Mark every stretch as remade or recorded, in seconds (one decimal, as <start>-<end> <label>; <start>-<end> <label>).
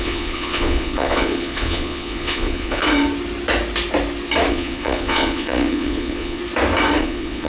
0.0-2.8 remade; 2.8-4.5 recorded; 4.5-6.4 remade; 6.4-7.0 recorded; 7.0-7.5 remade